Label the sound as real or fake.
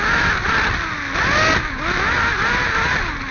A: real